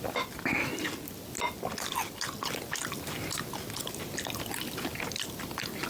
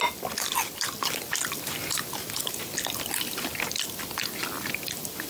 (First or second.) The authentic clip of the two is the first